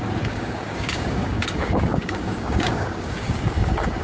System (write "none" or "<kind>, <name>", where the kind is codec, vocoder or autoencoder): codec, DAC